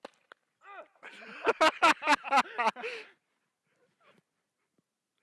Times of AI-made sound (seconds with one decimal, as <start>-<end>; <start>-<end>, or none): none